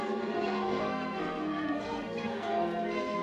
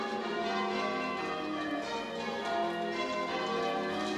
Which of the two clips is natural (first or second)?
second